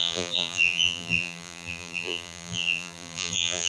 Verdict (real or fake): fake